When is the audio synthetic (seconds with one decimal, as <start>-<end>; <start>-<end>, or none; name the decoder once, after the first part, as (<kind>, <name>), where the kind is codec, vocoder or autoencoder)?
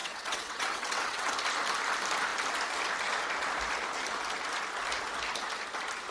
0.0-1.3 (vocoder, WaveNeXt)